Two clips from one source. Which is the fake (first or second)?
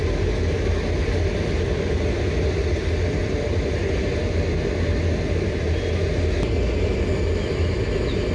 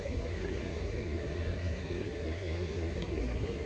second